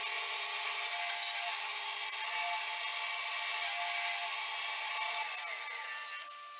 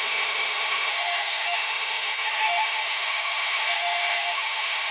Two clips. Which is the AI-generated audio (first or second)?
second